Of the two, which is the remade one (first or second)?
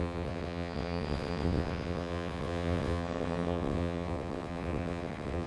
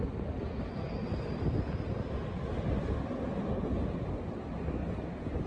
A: first